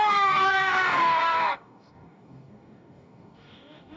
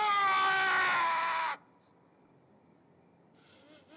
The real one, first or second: second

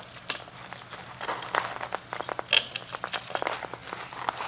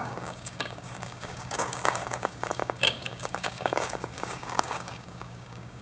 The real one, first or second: first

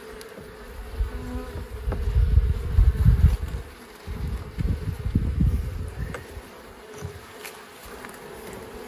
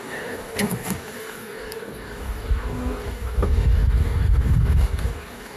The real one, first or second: first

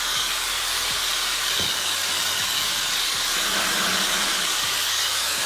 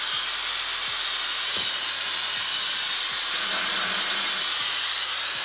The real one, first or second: second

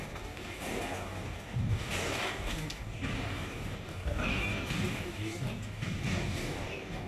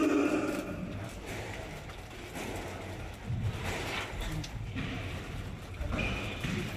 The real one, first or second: second